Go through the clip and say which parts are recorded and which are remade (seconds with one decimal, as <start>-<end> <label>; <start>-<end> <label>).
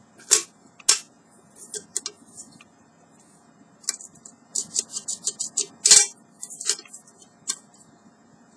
0.0-8.6 recorded